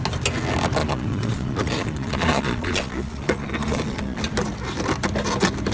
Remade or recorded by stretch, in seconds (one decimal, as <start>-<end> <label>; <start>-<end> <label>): 0.0-0.8 recorded; 0.8-4.2 remade; 4.2-5.7 recorded